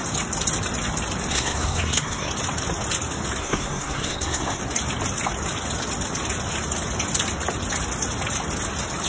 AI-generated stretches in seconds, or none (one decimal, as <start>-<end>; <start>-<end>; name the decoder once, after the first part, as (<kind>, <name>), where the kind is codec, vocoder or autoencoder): 1.3-2.3 (codec, SNAC); 3.4-4.6